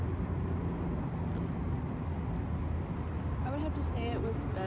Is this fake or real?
real